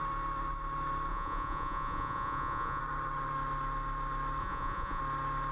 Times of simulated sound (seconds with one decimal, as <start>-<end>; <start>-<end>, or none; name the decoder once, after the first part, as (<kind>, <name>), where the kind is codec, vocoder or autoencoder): 1.1-2.8 (vocoder, Vocos); 4.4-5.0